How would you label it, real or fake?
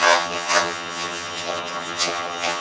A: fake